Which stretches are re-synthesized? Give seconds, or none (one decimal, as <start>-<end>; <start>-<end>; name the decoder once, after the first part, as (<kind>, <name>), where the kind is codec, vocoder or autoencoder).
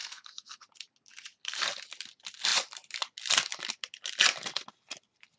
0.0-0.6 (codec, SNAC)